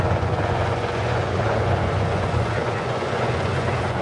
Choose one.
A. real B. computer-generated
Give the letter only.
B